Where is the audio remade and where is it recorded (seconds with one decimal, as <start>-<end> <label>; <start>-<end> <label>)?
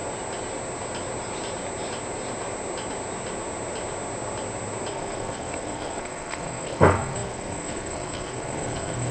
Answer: 0.0-4.9 recorded; 4.9-9.1 remade